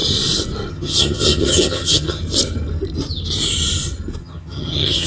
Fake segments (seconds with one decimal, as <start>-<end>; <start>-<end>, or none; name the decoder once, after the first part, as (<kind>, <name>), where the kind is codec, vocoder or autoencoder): 0.7-2.2 (vocoder, HiFi-GAN); 4.2-5.1